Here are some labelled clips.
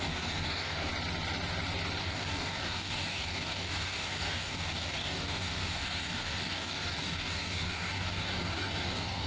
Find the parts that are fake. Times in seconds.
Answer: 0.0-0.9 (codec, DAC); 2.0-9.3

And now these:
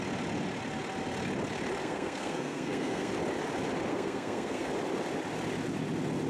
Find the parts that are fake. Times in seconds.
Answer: 1.8-3.1 (codec, SNAC); 3.9-4.7

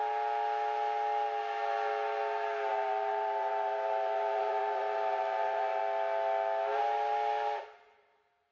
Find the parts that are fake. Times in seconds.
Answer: 2.7-5.8 (vocoder, BigVGAN v2)